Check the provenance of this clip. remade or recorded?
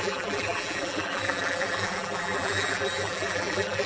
remade